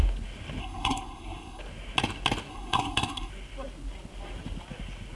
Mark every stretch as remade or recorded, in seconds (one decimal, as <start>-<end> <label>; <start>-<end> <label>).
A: 0.0-0.6 recorded; 0.6-1.6 remade; 1.6-2.5 recorded; 2.5-3.3 remade; 3.3-5.1 recorded